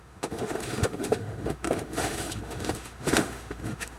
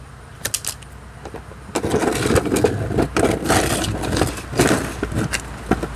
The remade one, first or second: first